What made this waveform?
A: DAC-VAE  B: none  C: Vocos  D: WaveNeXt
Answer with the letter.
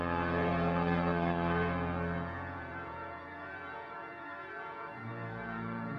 C